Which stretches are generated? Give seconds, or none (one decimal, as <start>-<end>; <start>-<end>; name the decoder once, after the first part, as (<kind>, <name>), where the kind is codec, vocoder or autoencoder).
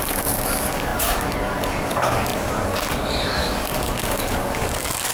0.0-5.1 (codec, DAC)